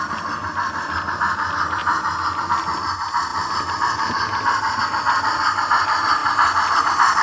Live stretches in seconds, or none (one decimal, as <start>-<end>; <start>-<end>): 0.0-7.2